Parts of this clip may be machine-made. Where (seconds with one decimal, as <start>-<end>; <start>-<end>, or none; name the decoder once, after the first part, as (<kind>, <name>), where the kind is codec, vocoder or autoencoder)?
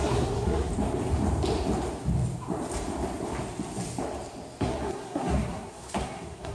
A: 0.0-0.7 (codec, SNAC); 4.6-6.5